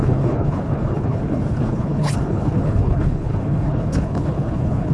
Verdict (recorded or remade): remade